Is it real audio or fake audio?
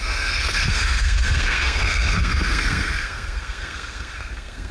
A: fake